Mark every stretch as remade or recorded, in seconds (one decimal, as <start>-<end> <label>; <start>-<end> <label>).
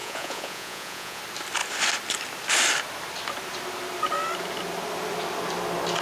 0.0-1.2 remade; 1.2-6.0 recorded